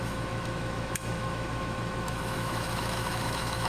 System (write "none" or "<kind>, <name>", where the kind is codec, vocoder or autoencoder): autoencoder, DAC-VAE